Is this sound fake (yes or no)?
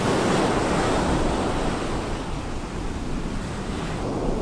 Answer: no